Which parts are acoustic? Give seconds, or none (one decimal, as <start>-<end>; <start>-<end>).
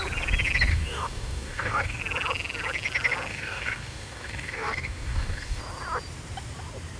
0.0-0.7; 2.0-3.3; 5.6-7.0